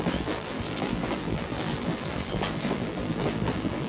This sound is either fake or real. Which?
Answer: fake